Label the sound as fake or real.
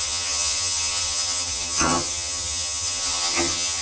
fake